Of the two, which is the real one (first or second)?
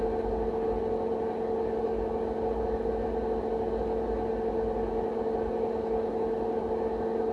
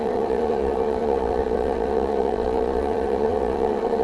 first